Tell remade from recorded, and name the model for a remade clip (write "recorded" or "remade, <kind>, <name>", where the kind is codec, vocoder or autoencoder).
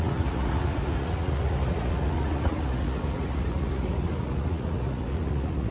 remade, vocoder, Vocos